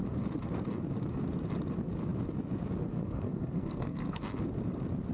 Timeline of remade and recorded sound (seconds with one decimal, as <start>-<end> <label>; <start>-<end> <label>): 0.0-3.0 recorded; 3.0-4.2 remade; 4.2-5.1 recorded